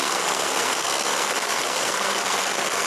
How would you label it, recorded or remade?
remade